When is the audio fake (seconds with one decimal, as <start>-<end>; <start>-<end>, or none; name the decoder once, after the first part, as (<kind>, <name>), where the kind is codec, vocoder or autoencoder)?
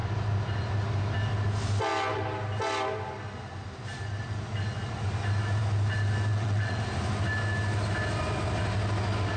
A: 6.3-6.8 (vocoder, WaveNeXt)